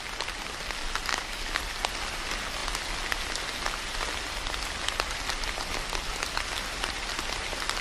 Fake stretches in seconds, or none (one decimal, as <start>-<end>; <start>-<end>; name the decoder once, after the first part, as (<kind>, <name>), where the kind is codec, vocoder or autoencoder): 1.1-1.6 (codec, DAC)